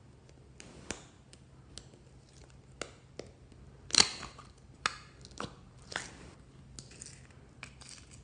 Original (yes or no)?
yes